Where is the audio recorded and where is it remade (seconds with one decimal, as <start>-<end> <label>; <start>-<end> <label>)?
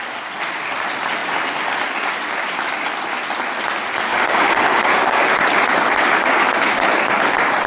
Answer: 0.0-4.1 recorded; 4.1-5.2 remade; 5.2-7.7 recorded